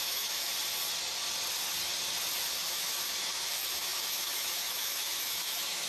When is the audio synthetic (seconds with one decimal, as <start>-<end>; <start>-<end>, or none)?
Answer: 0.0-0.5; 2.7-5.9